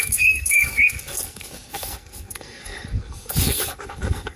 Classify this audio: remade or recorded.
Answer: remade